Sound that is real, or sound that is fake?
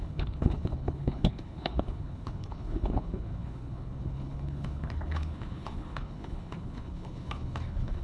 fake